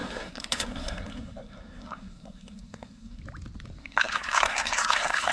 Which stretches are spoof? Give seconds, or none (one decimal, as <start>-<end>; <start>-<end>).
0.0-3.2; 3.8-5.3